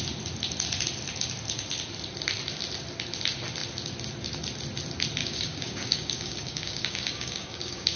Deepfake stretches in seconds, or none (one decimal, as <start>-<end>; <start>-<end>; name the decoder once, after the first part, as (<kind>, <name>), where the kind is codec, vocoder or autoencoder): 5.2-8.0 (codec, DAC)